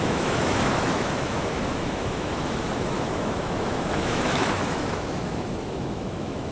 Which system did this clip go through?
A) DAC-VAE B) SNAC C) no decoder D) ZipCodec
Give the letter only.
A